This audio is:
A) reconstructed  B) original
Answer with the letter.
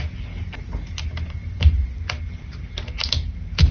B